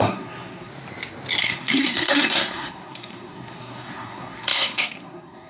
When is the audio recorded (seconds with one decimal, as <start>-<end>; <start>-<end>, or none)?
0.7-1.4

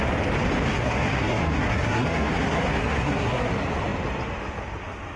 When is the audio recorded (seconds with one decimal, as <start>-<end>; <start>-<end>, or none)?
0.0-0.7; 3.5-5.2

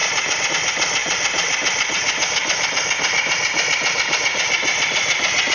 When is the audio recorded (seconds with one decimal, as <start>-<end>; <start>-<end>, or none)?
0.0-5.5

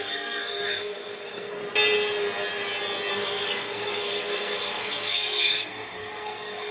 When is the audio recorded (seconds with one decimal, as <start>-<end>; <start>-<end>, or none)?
1.6-3.1

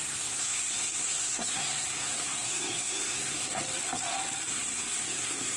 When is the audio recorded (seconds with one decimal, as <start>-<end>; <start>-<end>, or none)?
3.6-4.5

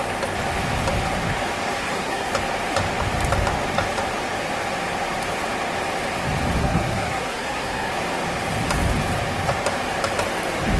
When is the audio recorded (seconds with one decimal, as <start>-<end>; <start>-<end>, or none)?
0.0-1.8; 2.3-6.6; 7.9-10.8